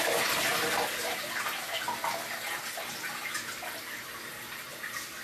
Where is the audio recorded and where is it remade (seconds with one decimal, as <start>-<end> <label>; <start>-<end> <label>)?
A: 0.0-5.2 recorded

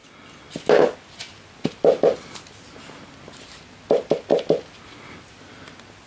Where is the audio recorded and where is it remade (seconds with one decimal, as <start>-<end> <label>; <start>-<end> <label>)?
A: 0.0-6.1 recorded

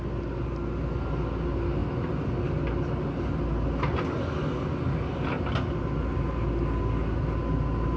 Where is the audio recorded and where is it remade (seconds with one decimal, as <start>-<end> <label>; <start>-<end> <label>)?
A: 0.0-8.0 recorded

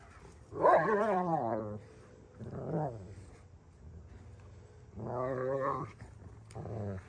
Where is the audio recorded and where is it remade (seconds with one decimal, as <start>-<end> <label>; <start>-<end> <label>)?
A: 0.0-0.8 recorded; 0.8-1.6 remade; 1.6-7.1 recorded

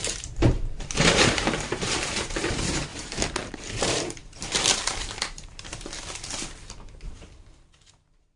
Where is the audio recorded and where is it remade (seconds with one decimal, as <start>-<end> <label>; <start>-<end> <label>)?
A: 0.0-2.9 remade; 2.9-3.5 recorded; 3.5-8.4 remade

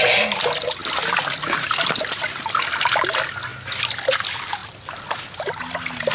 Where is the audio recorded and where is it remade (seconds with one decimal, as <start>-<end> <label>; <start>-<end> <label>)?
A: 0.0-6.1 recorded

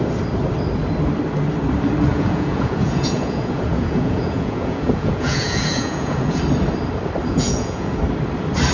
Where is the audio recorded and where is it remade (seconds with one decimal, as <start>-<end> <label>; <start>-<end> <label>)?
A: 0.0-2.1 recorded; 2.1-6.4 remade; 6.4-7.3 recorded; 7.3-8.0 remade; 8.0-8.7 recorded